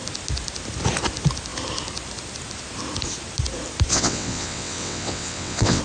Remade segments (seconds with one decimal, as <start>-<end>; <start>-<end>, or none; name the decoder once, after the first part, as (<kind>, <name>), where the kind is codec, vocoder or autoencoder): 3.9-5.8 (vocoder, WaveNeXt)